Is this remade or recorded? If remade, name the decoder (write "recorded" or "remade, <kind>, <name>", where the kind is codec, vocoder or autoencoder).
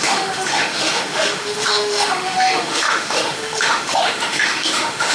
remade, autoencoder, DAC-VAE